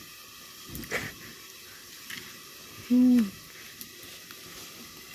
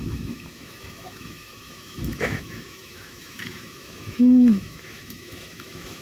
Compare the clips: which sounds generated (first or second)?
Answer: second